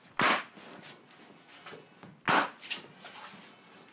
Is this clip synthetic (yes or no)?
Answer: no